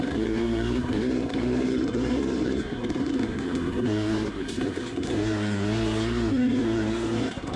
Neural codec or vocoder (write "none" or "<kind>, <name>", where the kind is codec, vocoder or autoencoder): codec, SNAC